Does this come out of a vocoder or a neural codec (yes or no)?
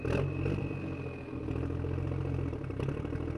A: no